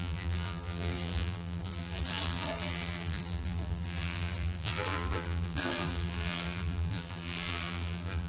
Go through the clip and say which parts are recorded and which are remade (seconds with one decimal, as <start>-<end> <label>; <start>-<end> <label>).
0.0-8.3 remade